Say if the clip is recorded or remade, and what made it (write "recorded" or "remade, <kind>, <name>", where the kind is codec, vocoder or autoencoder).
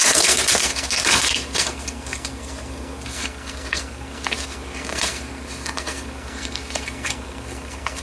remade, codec, SNAC